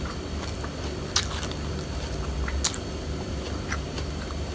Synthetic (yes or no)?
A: no